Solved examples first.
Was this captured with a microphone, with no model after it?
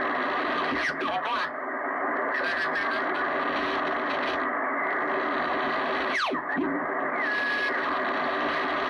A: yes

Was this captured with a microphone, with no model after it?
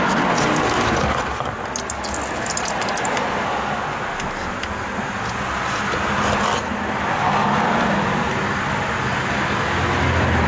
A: yes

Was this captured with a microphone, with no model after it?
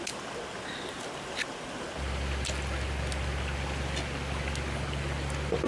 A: yes